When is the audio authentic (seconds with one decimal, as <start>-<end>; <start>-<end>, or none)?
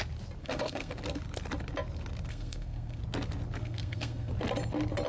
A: 0.0-0.4; 0.9-2.3; 3.0-3.6; 4.3-5.1